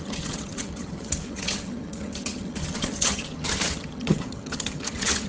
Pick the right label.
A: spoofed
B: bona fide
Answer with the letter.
A